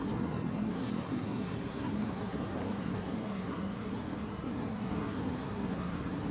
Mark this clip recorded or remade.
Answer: remade